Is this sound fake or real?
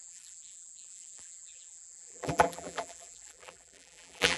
fake